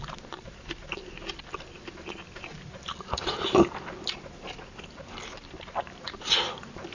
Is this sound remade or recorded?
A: recorded